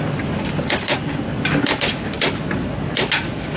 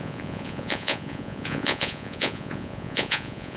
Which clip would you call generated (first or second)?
second